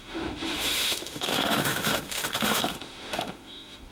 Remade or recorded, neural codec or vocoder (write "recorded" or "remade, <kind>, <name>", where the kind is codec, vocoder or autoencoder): remade, autoencoder, DAC-VAE